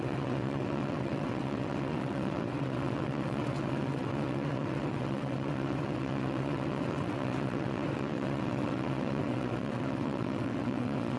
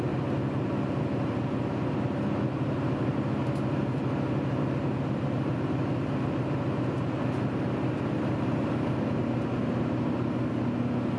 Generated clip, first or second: first